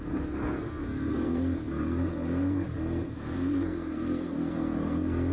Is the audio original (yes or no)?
no